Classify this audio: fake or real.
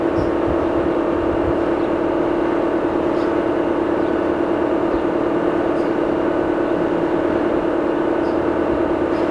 real